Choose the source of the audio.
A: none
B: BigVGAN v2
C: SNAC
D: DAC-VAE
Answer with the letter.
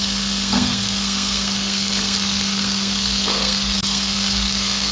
C